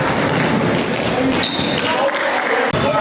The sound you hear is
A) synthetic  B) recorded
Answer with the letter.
B